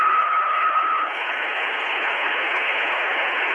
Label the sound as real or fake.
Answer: fake